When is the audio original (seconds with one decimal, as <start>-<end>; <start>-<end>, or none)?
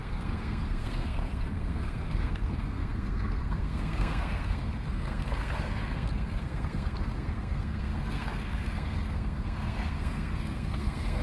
none